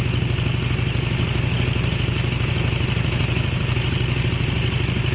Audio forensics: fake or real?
real